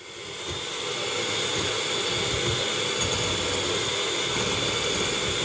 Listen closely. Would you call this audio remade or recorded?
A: recorded